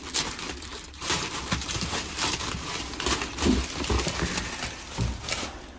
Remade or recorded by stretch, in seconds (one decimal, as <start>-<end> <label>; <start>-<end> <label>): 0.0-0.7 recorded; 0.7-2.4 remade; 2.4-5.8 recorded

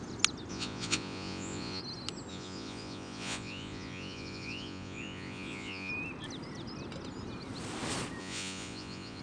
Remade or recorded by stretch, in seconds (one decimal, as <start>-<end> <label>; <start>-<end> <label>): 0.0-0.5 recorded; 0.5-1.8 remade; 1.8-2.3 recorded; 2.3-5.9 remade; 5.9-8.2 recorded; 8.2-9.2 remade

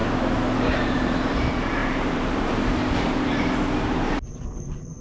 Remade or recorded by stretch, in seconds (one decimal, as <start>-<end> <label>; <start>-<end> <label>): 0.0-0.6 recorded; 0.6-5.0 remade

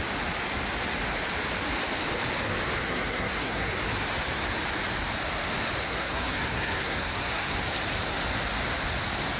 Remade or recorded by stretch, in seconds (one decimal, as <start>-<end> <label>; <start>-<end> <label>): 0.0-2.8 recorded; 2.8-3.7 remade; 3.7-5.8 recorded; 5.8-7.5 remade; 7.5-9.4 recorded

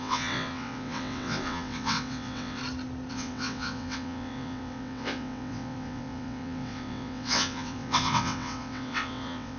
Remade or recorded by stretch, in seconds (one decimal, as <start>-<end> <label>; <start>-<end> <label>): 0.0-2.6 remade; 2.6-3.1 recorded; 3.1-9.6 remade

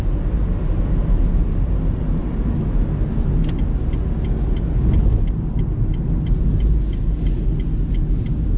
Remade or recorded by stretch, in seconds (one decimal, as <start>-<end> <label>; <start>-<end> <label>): 0.0-8.6 recorded

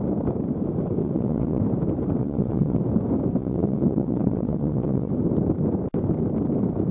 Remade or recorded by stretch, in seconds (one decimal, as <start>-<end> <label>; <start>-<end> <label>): 0.0-1.0 recorded; 1.0-1.6 remade; 1.6-2.2 recorded; 2.2-2.8 remade; 2.8-3.4 recorded; 3.4-5.1 remade; 5.1-6.9 recorded

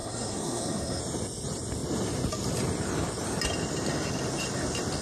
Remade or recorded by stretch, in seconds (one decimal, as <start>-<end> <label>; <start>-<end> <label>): 0.0-1.0 remade; 1.0-5.0 recorded